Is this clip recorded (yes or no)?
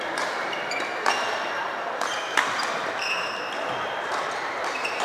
no